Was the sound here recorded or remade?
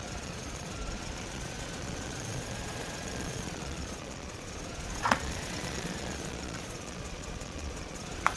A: remade